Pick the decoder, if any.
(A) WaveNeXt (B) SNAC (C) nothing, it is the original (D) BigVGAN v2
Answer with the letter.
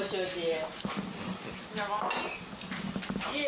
C